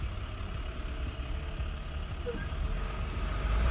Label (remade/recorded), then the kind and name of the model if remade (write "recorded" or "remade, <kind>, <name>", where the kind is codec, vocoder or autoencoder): recorded